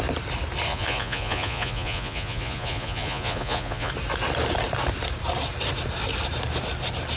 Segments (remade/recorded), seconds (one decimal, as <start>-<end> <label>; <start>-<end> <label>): 0.0-0.7 recorded; 0.7-3.9 remade; 3.9-7.2 recorded